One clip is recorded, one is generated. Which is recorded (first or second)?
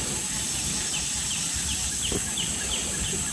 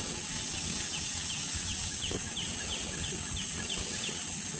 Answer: first